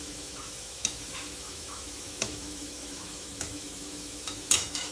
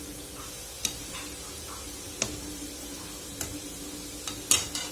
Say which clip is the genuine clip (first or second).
second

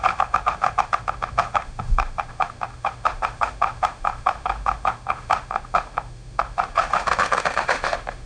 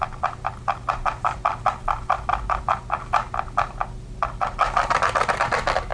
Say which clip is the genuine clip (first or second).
second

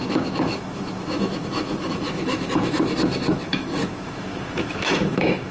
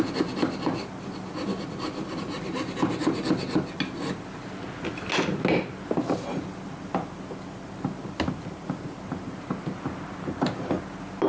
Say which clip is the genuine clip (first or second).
second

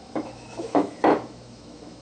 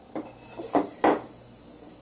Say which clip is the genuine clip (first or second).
second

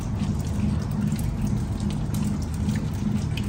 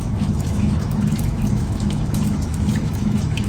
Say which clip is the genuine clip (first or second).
first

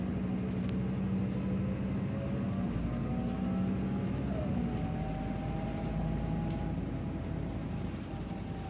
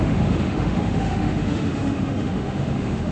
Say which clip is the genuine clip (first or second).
first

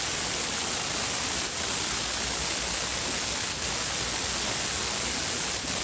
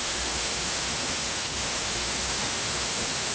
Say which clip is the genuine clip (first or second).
first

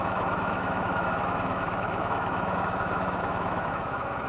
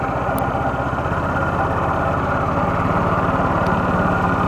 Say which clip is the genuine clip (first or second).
second